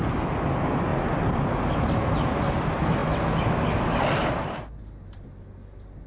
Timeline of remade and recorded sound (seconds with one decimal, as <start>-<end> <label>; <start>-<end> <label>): 0.0-0.9 recorded; 0.9-1.7 remade; 1.7-6.1 recorded